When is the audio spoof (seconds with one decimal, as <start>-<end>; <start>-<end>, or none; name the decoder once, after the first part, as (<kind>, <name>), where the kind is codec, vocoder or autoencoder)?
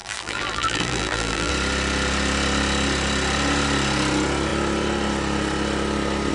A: 0.0-1.5 (vocoder, BigVGAN v2)